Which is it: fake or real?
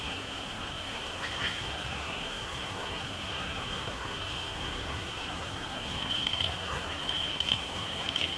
fake